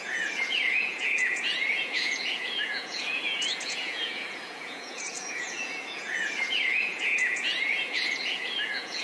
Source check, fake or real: fake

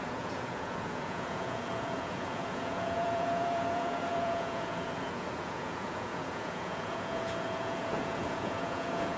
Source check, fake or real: fake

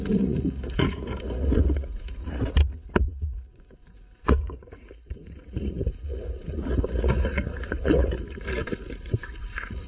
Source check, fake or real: fake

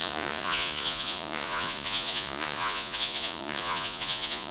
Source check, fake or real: fake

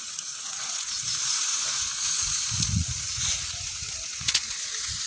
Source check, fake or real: fake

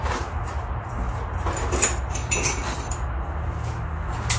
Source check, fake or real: real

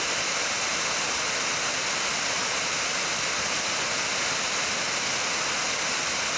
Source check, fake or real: real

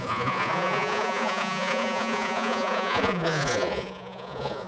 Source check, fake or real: fake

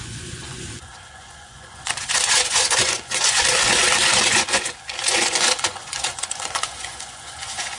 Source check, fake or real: fake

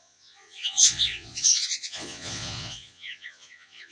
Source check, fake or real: fake